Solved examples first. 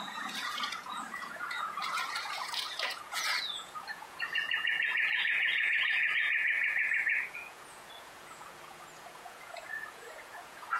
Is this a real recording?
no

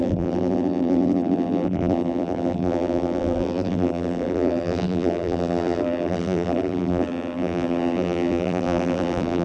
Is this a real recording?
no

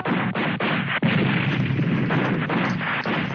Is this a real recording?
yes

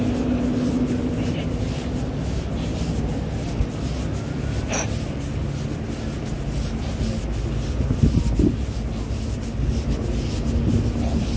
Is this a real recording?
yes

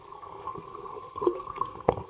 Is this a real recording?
no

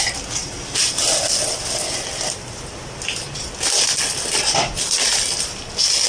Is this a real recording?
yes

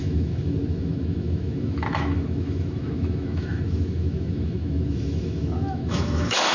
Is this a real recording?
no